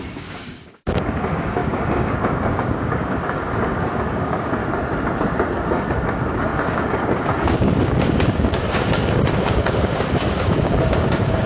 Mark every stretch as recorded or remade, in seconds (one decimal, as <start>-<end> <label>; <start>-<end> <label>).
0.0-4.6 remade; 4.6-5.7 recorded; 5.7-11.5 remade